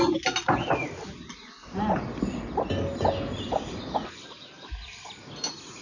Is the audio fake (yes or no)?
no